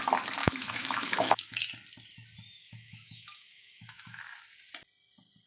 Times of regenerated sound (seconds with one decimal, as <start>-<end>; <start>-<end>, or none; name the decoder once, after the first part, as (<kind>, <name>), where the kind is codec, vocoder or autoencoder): 0.4-1.7 (autoencoder, DAC-VAE); 2.6-4.2